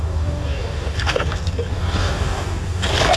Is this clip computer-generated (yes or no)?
yes